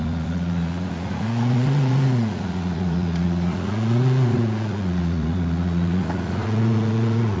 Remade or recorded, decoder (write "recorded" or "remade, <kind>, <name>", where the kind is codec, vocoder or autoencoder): remade, vocoder, Vocos